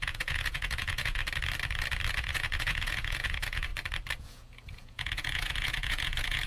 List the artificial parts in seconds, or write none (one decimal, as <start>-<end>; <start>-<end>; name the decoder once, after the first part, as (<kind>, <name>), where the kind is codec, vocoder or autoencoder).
0.0-1.2 (vocoder, Vocos); 2.1-3.7; 4.2-6.5